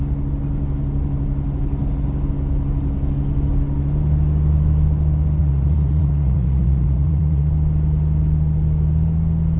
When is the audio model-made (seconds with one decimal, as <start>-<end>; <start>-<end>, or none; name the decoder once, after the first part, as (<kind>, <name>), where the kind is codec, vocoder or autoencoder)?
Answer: 5.4-7.5 (vocoder, Vocos)